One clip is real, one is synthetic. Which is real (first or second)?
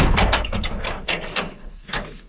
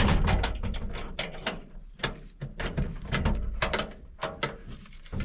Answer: second